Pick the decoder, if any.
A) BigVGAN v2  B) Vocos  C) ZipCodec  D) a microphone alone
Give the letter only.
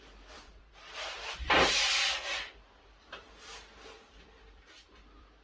A